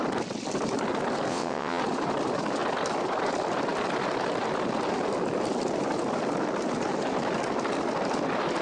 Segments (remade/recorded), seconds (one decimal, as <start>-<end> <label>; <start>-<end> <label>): 0.0-1.3 recorded; 1.3-1.8 remade; 1.8-8.6 recorded